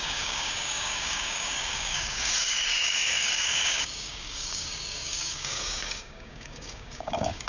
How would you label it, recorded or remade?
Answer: remade